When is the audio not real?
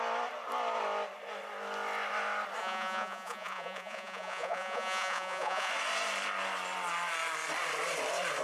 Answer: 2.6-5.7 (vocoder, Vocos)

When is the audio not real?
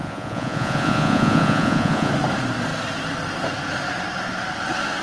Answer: 0.0-2.1 (vocoder, Vocos)